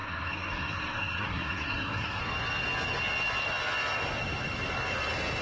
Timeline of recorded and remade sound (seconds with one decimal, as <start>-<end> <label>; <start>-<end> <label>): 0.0-2.2 remade; 2.2-5.4 recorded